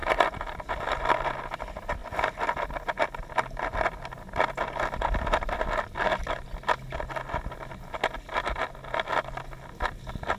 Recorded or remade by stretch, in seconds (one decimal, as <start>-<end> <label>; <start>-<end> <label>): 0.0-0.7 remade; 0.7-10.4 recorded

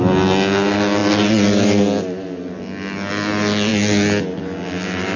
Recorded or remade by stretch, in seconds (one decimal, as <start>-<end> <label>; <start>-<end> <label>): 0.0-5.2 recorded

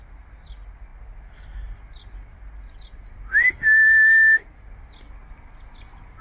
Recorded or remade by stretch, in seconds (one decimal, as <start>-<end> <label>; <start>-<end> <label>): 0.0-6.2 recorded